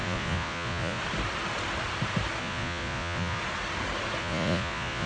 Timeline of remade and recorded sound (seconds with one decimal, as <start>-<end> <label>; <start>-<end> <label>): 0.0-1.0 remade; 1.0-2.4 recorded; 2.4-3.4 remade; 3.4-4.2 recorded; 4.2-5.1 remade